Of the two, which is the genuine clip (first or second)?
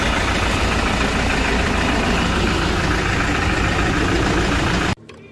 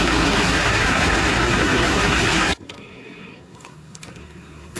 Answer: first